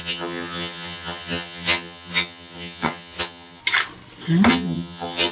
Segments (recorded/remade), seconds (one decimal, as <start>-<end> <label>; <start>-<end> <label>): 0.0-3.6 remade; 3.6-4.5 recorded; 4.5-5.3 remade